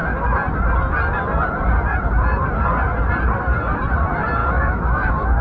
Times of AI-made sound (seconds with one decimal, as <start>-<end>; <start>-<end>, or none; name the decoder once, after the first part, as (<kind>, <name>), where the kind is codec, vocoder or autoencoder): 4.4-5.4 (autoencoder, DAC-VAE)